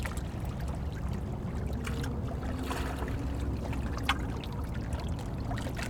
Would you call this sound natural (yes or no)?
yes